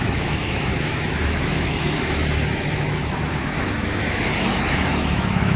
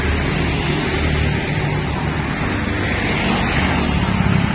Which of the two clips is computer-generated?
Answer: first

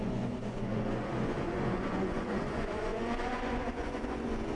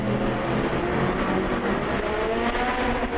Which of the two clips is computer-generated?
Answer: first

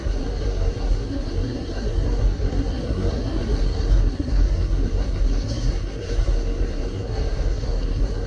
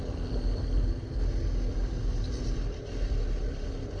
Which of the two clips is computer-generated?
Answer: first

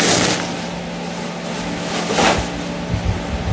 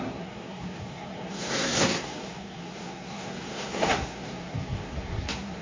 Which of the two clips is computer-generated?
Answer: second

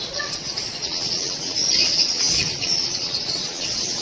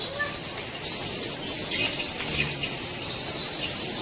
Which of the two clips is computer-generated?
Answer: first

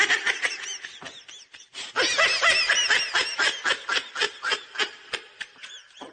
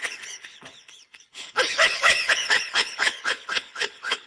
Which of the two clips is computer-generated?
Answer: second